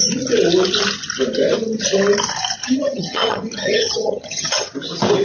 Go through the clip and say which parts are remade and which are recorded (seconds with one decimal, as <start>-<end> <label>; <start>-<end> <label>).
0.0-2.6 recorded; 2.6-4.7 remade; 4.7-5.2 recorded